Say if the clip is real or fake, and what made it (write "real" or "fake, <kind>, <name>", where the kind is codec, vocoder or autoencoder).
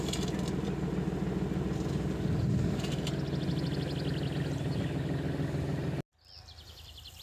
real